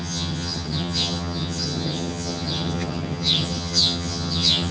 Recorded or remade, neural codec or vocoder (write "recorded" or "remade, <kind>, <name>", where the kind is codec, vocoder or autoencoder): remade, vocoder, HiFi-GAN